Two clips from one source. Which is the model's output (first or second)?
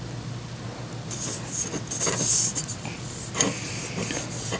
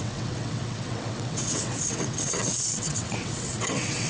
second